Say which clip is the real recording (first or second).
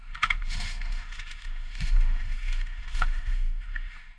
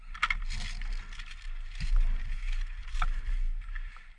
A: second